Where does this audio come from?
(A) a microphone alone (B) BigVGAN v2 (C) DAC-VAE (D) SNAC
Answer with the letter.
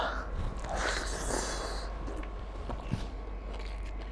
A